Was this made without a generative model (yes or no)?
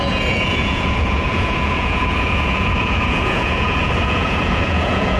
no